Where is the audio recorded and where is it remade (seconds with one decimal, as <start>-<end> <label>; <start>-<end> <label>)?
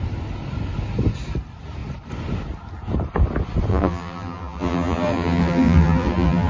0.0-3.7 recorded; 3.7-6.5 remade